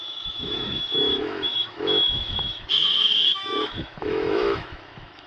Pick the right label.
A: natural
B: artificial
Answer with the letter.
B